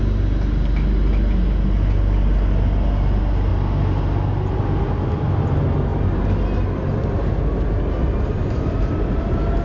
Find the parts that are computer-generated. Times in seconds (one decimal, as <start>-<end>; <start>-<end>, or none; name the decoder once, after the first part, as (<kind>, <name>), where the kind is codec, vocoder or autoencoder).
none